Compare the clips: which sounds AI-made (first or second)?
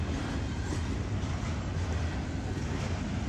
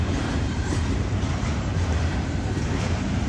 second